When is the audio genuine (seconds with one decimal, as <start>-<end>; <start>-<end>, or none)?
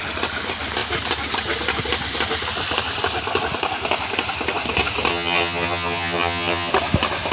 0.0-5.1; 6.7-7.3